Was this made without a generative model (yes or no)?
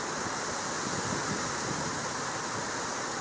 yes